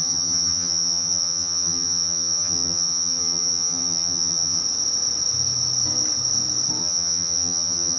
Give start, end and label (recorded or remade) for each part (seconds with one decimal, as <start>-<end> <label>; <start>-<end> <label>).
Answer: 0.0-4.6 remade; 4.6-6.8 recorded; 6.8-8.0 remade